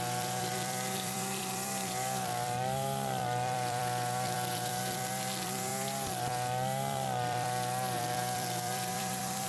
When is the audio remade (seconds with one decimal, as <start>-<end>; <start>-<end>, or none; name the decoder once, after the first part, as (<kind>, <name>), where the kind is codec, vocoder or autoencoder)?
0.0-9.5 (vocoder, BigVGAN v2)